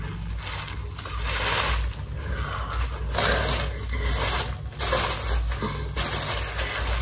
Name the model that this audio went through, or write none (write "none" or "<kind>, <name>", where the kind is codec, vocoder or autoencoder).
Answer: none